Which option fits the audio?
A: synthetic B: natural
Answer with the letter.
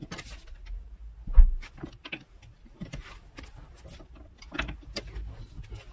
B